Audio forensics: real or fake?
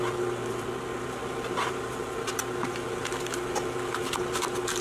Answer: real